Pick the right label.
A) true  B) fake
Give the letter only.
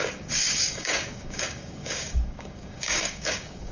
B